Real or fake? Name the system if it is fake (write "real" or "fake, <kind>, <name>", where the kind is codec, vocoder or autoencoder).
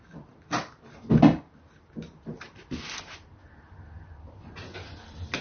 real